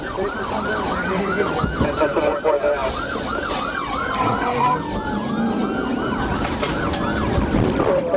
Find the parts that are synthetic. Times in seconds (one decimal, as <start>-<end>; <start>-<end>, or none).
none